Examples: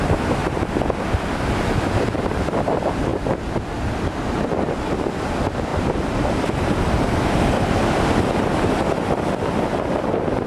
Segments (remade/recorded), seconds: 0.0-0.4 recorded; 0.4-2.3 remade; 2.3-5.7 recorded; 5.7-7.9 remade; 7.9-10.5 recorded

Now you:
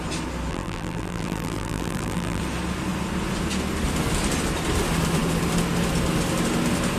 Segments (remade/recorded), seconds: 0.0-0.5 recorded; 0.5-2.4 remade; 2.4-7.0 recorded

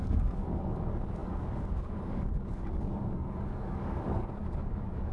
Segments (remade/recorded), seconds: 0.0-5.1 remade

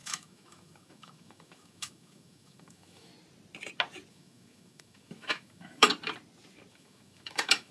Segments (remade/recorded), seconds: 0.0-3.1 remade; 3.1-4.1 recorded; 4.1-5.9 remade; 5.9-6.7 recorded; 6.7-7.7 remade

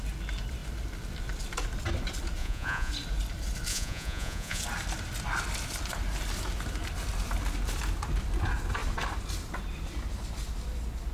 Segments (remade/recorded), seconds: 0.0-2.4 recorded; 2.4-2.9 remade; 2.9-3.7 recorded; 3.7-4.6 remade; 4.6-11.1 recorded

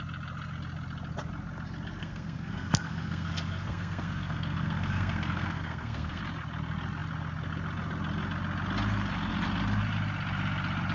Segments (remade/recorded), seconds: 0.0-2.0 recorded; 2.0-6.2 remade; 6.2-10.9 recorded